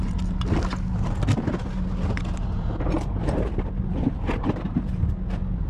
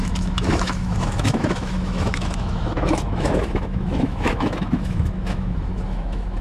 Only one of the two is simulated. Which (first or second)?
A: second